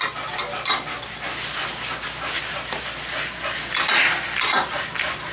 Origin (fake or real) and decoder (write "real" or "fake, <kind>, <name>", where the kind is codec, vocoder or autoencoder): real